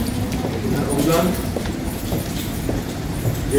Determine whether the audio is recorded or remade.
remade